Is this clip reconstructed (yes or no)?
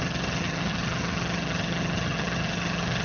yes